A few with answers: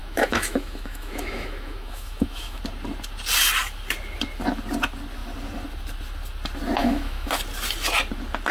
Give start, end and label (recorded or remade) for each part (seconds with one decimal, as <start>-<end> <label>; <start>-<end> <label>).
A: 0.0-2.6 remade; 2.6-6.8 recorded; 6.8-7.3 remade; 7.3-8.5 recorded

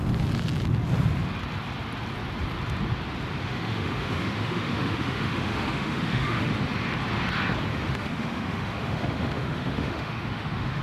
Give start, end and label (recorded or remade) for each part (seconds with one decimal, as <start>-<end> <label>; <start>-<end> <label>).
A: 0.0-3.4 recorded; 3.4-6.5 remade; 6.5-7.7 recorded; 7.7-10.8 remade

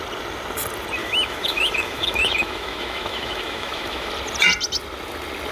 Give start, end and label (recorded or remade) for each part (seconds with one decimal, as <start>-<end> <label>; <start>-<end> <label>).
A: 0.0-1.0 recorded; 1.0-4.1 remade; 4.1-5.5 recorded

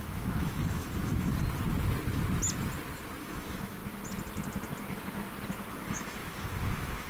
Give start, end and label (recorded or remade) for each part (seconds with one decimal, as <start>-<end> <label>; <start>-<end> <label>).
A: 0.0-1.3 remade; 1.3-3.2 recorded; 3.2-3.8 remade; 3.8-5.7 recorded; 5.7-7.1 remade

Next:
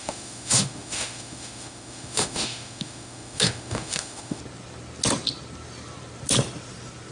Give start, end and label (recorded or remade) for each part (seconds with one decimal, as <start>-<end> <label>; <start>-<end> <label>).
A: 0.0-4.4 remade; 4.4-7.1 recorded

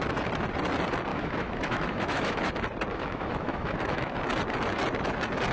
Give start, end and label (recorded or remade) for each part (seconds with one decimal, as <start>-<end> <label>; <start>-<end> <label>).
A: 0.0-1.1 recorded; 1.1-2.4 remade; 2.4-2.9 recorded; 2.9-4.1 remade; 4.1-5.5 recorded